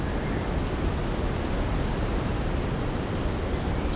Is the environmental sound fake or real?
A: real